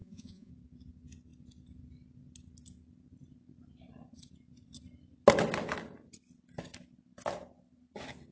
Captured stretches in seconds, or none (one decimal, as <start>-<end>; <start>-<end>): 0.5-8.3

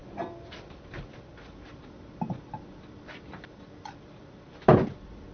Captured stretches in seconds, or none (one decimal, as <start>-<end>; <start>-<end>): 0.0-2.4

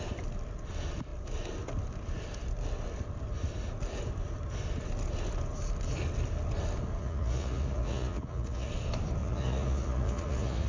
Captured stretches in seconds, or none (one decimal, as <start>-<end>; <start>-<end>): 0.0-7.0; 8.7-9.2